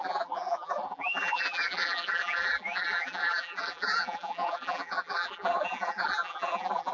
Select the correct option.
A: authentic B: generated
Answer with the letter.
B